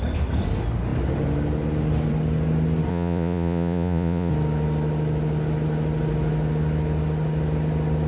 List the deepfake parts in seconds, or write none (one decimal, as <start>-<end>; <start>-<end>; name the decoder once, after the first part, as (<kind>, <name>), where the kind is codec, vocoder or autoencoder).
2.9-4.3 (vocoder, Vocos)